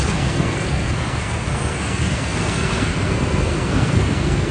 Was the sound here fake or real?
fake